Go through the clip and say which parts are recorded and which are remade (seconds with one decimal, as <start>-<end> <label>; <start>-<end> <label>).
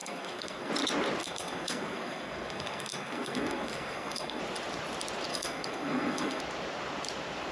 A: 0.0-0.7 remade; 0.7-1.2 recorded; 1.2-4.4 remade; 4.4-5.3 recorded; 5.3-6.4 remade; 6.4-7.5 recorded